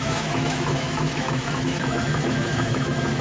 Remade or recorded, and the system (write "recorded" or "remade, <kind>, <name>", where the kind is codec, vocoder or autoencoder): remade, autoencoder, DAC-VAE